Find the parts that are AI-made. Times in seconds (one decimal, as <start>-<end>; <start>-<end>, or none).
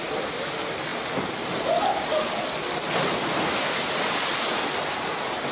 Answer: none